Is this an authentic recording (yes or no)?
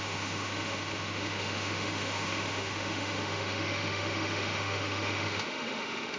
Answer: no